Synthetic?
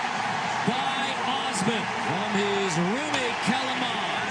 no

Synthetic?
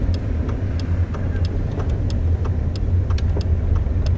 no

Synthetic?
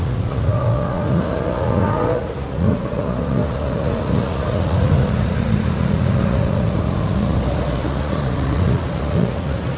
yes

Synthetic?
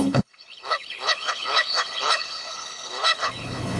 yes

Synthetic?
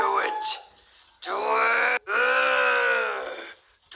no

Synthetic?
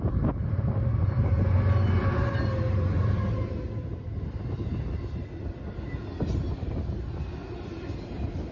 no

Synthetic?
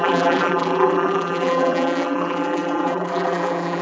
yes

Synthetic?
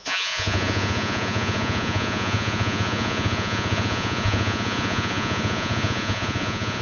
yes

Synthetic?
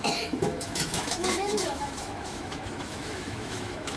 yes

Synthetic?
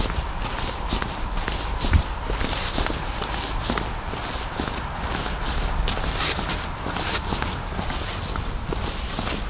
no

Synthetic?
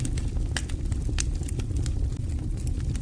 no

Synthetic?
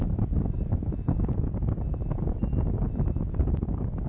no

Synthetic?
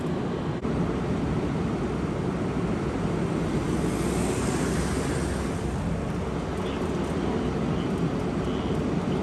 no